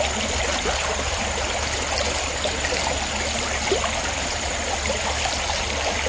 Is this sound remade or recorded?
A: recorded